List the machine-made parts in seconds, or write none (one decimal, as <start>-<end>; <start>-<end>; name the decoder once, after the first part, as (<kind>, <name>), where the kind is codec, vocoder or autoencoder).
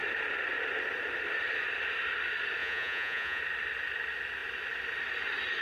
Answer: 2.6-3.4 (vocoder, Vocos)